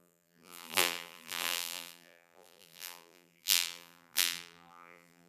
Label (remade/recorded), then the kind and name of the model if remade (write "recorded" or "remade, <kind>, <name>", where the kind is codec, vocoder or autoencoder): remade, vocoder, BigVGAN v2